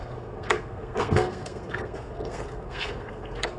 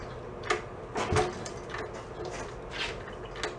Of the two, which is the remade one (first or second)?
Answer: first